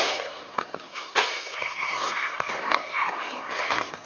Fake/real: fake